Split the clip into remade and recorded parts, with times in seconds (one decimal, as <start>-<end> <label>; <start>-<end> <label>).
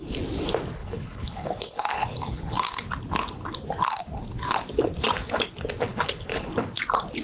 0.0-0.8 recorded; 0.8-2.9 remade; 2.9-5.9 recorded; 5.9-6.5 remade; 6.5-7.2 recorded